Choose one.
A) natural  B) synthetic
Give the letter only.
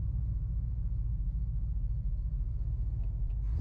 A